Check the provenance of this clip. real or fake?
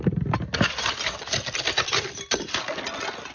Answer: real